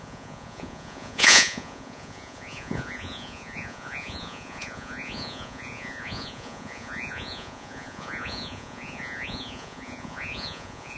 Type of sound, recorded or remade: remade